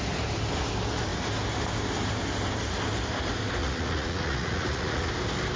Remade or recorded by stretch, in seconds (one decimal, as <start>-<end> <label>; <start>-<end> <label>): 0.0-3.6 recorded; 3.6-5.1 remade; 5.1-5.6 recorded